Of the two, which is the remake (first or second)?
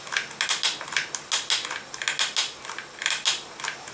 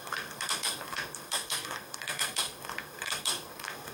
second